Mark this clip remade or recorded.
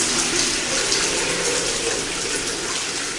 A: recorded